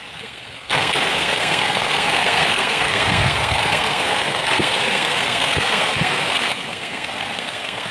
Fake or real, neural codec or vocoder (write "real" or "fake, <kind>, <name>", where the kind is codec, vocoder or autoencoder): fake, codec, SNAC